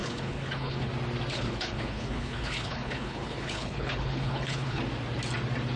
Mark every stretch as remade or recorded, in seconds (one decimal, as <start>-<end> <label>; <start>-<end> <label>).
0.0-0.9 remade; 0.9-1.3 recorded; 1.3-4.8 remade; 4.8-5.8 recorded